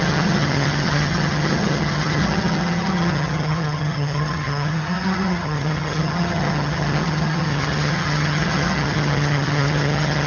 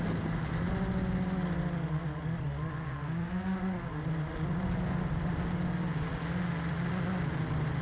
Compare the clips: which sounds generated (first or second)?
first